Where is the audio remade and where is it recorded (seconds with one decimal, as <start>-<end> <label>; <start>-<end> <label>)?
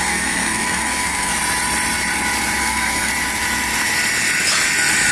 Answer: 0.0-1.3 remade; 1.3-2.6 recorded; 2.6-3.1 remade; 3.1-5.1 recorded